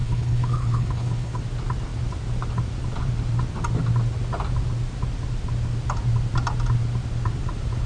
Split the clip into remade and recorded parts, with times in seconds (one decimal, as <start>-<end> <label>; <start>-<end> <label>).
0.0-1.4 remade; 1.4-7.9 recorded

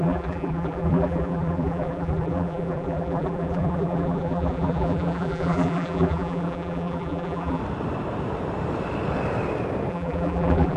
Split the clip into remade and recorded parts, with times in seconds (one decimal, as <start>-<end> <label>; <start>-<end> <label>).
0.0-7.6 remade; 7.6-9.9 recorded; 9.9-10.8 remade

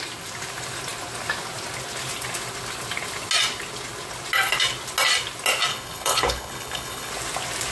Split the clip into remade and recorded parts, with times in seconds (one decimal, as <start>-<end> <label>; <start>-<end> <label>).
0.0-5.7 recorded; 5.7-7.1 remade; 7.1-7.7 recorded